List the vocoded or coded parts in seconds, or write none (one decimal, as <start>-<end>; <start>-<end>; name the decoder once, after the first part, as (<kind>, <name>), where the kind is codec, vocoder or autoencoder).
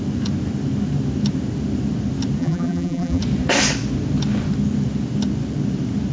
2.4-3.2 (vocoder, BigVGAN v2)